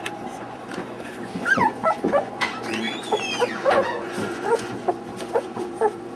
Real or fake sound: fake